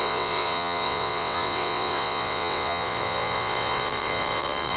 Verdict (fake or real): fake